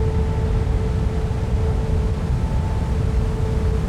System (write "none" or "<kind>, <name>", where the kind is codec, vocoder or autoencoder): none